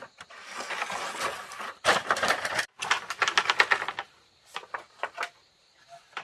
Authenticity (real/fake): real